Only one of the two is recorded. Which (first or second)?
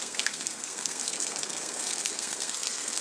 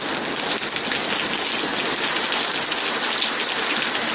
second